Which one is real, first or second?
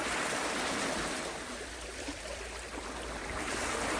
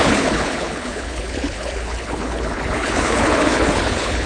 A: first